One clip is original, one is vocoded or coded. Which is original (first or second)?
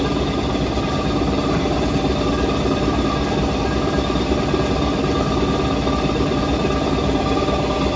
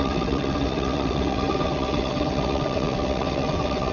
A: first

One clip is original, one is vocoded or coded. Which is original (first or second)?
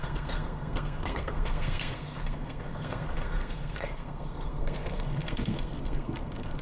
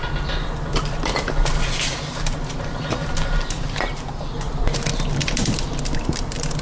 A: second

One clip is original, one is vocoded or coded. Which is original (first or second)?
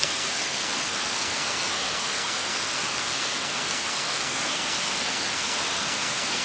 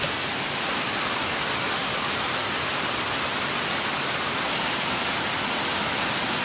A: second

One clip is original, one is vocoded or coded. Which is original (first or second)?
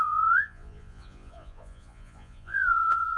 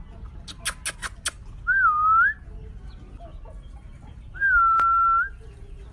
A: second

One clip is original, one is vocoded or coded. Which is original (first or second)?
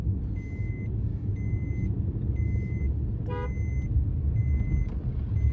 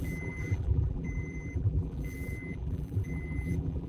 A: first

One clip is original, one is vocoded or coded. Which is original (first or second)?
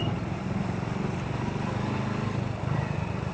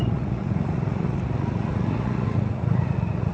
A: first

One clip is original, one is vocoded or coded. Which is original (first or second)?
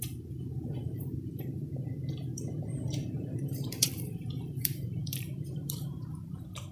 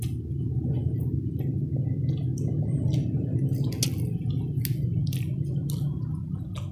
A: second